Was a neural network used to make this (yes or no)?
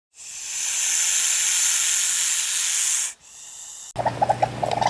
no